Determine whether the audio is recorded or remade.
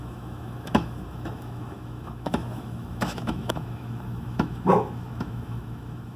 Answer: remade